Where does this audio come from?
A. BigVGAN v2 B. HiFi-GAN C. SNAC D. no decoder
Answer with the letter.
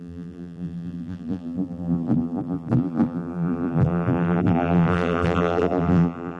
A